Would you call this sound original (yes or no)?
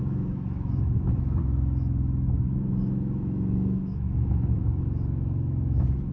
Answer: no